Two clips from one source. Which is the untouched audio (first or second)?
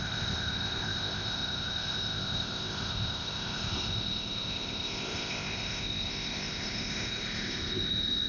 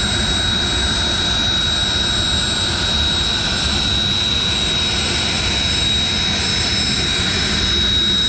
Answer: second